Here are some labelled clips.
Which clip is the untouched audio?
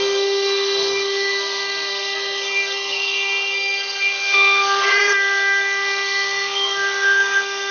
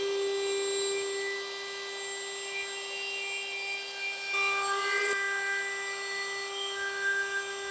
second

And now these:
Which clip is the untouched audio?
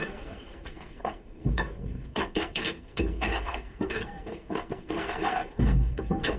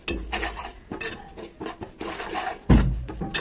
second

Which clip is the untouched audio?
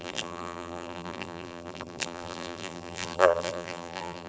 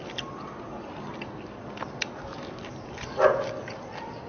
second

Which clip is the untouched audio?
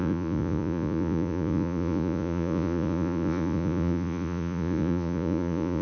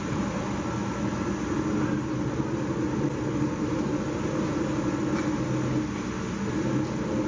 second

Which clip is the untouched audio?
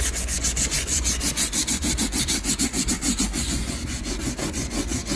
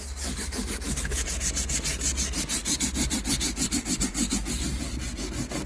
second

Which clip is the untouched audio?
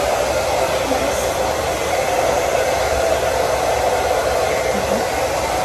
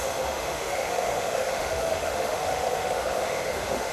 first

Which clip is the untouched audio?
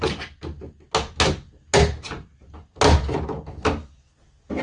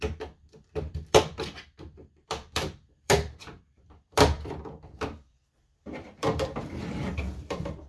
first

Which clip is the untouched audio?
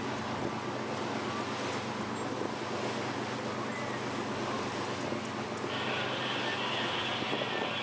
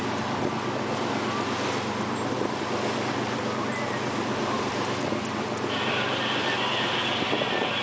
first